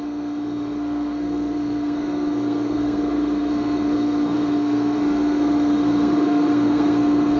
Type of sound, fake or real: fake